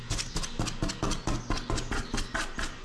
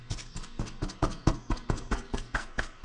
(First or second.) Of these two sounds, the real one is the first